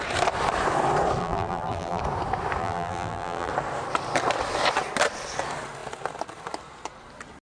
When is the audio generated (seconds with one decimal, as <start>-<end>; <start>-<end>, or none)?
1.2-2.0; 2.6-3.5